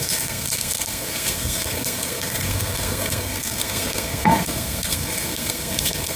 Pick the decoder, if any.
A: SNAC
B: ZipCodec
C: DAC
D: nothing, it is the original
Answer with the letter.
A